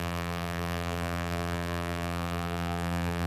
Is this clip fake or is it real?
fake